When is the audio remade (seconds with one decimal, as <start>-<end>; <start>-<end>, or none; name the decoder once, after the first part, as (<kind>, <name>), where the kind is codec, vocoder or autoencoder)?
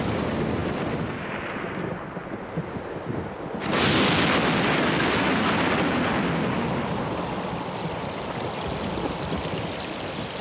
none